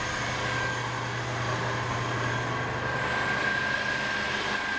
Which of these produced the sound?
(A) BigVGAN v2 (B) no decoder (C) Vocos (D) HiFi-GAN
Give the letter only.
B